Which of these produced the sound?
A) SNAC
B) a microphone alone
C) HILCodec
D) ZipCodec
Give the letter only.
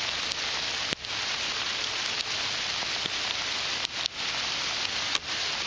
B